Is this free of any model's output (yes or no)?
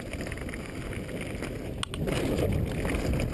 yes